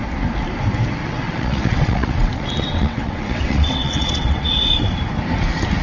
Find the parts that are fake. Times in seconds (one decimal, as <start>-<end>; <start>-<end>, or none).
1.0-4.5